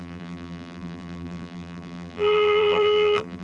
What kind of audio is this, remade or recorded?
remade